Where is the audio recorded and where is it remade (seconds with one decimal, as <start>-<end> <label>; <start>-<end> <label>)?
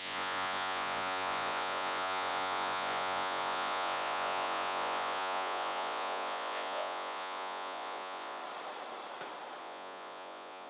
0.0-8.4 remade; 8.4-9.6 recorded; 9.6-10.7 remade